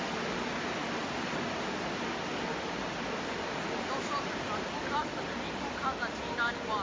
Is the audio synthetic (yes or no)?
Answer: no